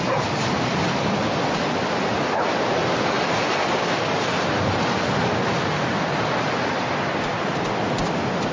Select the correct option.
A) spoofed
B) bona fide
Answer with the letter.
B